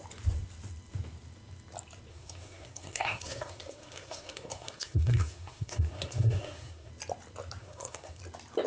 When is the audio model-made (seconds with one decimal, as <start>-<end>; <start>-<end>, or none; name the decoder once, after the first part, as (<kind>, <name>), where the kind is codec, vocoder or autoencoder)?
2.1-6.9 (codec, SNAC); 7.6-8.2